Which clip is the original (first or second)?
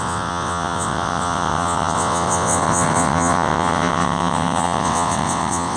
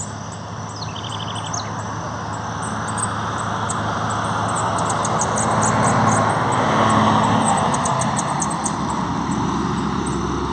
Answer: second